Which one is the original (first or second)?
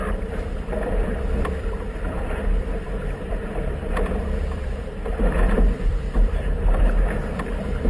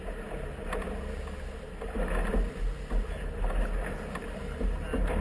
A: second